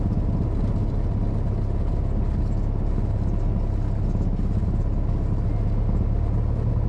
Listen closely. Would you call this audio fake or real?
real